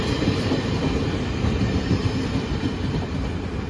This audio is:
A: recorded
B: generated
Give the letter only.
A